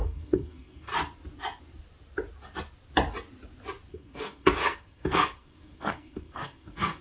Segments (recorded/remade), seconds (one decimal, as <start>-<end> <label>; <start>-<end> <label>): 0.0-0.9 remade; 0.9-3.9 recorded; 3.9-7.0 remade